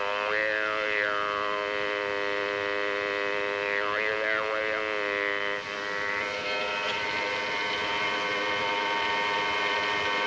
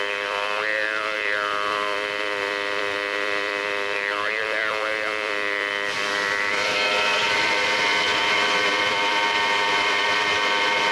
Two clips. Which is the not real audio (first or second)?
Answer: second